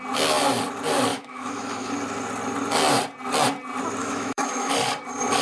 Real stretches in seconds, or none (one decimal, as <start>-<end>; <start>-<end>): 0.0-1.1; 1.9-4.0; 4.7-5.4